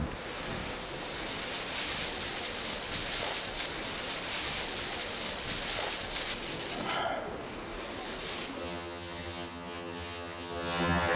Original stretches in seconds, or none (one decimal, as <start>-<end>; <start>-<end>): 0.0-8.6